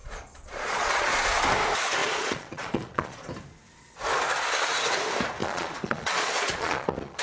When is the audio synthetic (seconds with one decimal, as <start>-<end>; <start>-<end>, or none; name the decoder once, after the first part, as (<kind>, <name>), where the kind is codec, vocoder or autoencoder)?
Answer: 0.0-1.4 (vocoder, Vocos); 2.0-3.3; 5.4-7.2